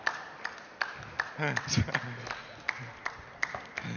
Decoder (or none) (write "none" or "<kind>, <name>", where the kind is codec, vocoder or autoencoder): none